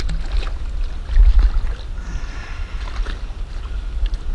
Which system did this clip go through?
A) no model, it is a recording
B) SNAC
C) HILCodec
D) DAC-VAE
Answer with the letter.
A